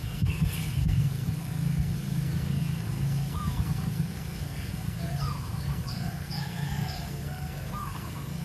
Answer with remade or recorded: remade